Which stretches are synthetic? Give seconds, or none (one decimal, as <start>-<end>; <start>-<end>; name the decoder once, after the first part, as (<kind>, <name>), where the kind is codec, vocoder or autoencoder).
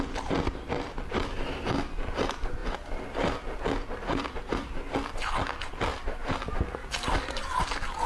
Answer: none